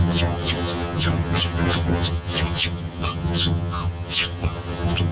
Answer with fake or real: fake